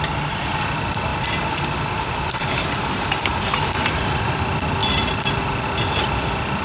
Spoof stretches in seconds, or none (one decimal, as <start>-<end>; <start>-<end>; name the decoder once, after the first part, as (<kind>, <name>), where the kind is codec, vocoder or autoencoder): 1.1-3.4 (vocoder, BigVGAN v2); 4.8-5.4